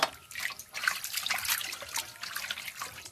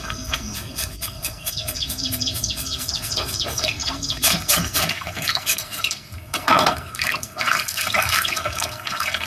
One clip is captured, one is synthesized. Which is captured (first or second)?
first